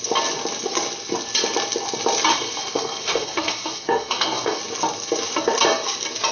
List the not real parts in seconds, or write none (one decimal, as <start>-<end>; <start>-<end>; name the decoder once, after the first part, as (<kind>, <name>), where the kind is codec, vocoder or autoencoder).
2.3-4.6 (codec, SNAC)

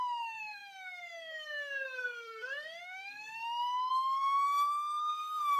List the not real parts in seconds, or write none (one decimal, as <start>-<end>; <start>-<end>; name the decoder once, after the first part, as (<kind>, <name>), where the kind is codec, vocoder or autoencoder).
0.0-5.6 (codec, SNAC)

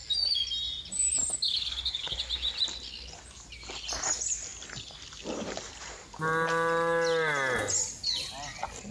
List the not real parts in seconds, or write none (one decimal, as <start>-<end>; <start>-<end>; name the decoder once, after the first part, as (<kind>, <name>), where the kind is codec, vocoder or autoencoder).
none

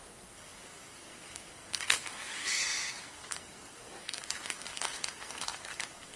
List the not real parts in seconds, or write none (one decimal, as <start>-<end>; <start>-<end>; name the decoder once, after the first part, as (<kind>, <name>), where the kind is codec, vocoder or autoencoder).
0.0-6.2 (codec, SNAC)

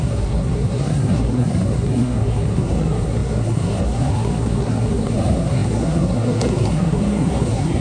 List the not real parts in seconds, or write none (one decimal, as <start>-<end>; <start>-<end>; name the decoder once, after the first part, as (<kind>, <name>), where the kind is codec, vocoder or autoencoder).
0.0-7.8 (codec, SNAC)